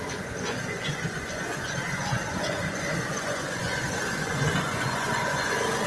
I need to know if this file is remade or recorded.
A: remade